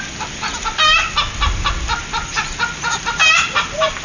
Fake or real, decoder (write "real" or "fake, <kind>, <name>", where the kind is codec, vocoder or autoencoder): real